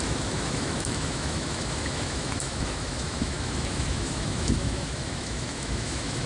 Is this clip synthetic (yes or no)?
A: yes